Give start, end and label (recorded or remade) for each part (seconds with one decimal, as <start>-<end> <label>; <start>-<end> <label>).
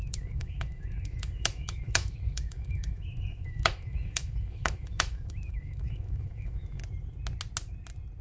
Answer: 0.0-6.8 remade; 6.8-8.2 recorded